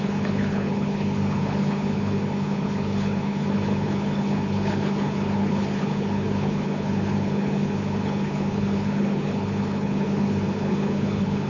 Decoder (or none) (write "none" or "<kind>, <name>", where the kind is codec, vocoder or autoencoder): codec, HILCodec